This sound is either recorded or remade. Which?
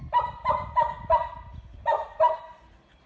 recorded